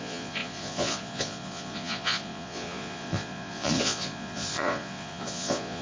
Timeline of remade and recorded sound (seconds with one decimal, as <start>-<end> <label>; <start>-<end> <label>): 0.0-5.8 remade